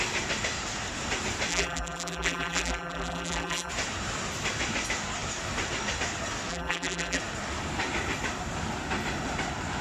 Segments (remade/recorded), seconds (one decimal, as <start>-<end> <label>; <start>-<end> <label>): 0.0-1.5 recorded; 1.5-3.7 remade; 3.7-6.5 recorded; 6.5-7.2 remade; 7.2-9.8 recorded